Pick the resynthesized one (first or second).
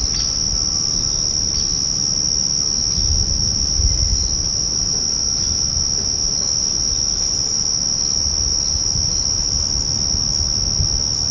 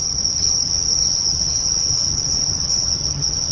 second